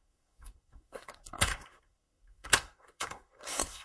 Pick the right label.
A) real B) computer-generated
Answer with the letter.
B